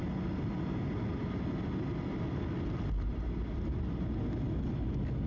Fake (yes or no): no